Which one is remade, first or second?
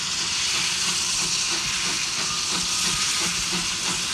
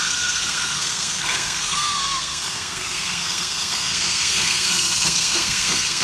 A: second